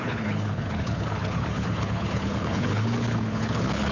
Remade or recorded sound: remade